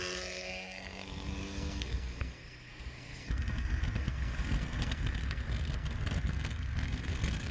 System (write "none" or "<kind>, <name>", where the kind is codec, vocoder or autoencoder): codec, SNAC